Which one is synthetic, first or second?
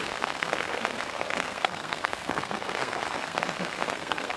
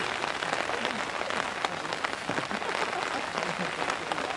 first